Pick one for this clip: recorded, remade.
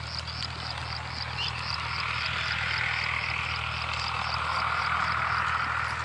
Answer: recorded